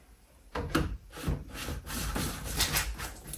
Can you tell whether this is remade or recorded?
recorded